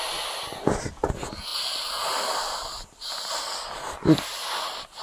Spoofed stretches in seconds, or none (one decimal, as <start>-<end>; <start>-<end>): none